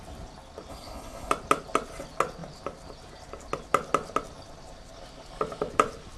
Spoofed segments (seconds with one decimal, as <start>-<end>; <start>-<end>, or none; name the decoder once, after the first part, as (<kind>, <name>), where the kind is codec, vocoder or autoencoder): 0.7-1.3 (codec, HILCodec)